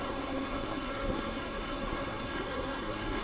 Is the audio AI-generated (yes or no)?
yes